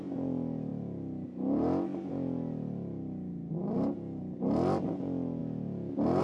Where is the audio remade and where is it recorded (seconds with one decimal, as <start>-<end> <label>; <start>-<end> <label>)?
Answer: 0.0-6.2 recorded